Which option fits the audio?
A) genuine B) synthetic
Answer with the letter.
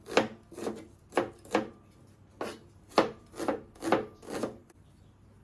A